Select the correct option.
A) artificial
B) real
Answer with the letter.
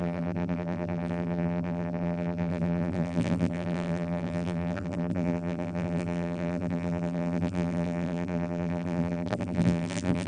A